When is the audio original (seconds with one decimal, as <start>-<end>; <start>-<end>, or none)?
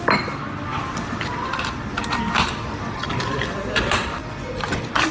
0.0-0.7; 3.8-4.2